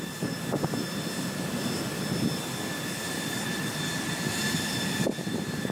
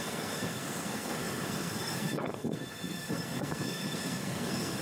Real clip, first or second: first